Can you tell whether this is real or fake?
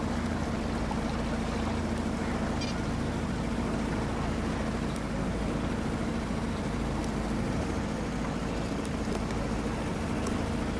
real